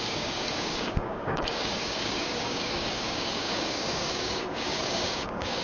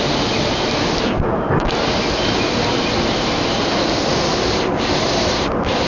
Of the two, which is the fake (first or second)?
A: first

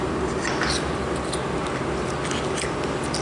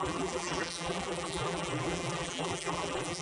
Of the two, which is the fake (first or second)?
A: second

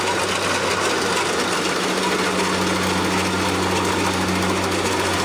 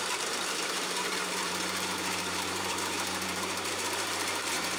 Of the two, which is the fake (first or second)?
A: second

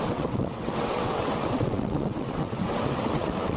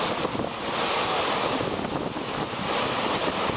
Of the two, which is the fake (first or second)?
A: first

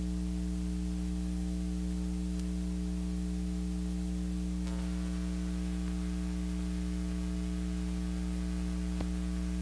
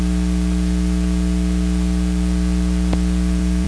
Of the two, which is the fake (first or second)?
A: second